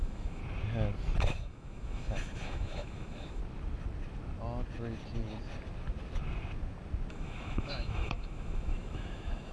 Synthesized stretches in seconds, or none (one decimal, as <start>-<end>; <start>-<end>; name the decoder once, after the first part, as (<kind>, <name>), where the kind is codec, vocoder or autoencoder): 0.0-0.4 (autoencoder, DAC-VAE); 1.2-3.4; 7.1-9.5